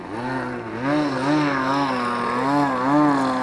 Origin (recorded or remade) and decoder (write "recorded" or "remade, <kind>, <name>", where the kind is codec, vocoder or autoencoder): recorded